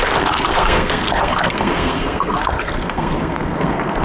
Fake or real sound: fake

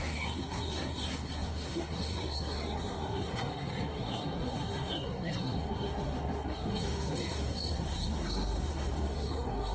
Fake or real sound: fake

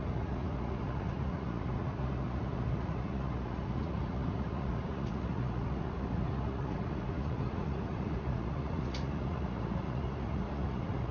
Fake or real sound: fake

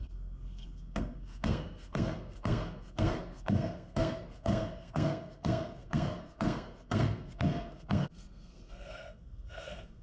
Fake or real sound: fake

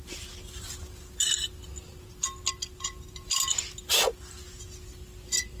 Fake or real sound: real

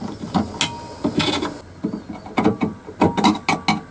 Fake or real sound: real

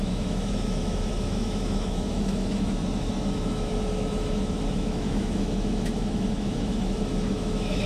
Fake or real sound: fake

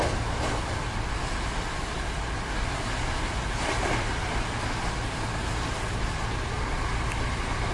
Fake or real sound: real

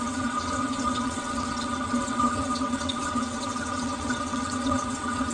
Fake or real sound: fake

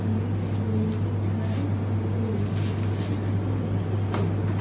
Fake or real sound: real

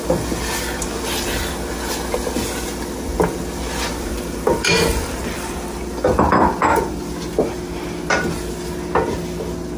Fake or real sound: real